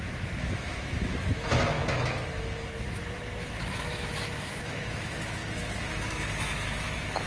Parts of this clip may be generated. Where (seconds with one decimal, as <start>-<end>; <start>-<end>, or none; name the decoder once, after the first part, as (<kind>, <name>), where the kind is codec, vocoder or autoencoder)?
0.0-7.3 (autoencoder, DAC-VAE)